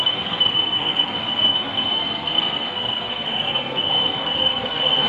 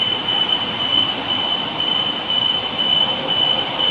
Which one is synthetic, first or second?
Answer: first